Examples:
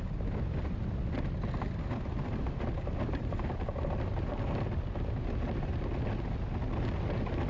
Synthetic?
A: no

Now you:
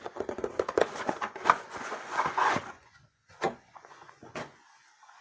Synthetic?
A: yes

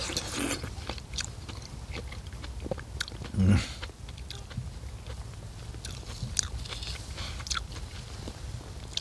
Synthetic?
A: no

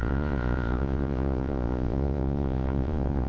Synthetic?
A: yes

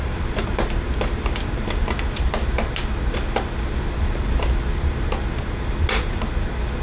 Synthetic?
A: no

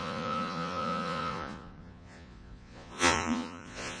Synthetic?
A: yes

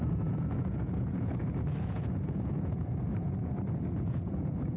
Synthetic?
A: yes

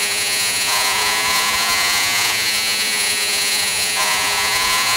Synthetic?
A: yes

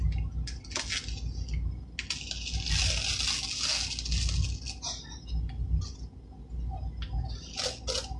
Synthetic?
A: no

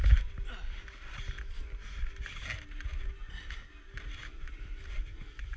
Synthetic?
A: no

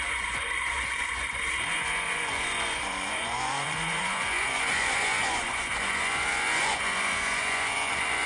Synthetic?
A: yes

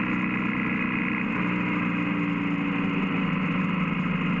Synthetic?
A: no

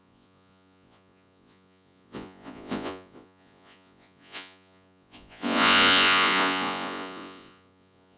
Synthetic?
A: yes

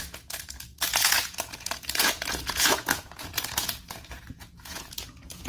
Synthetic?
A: yes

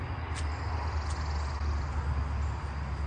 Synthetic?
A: no